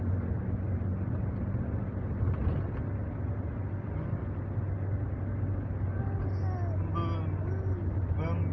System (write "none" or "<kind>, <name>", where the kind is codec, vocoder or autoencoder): none